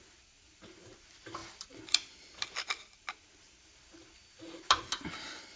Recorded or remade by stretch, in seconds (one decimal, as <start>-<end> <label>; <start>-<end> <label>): 0.0-5.6 recorded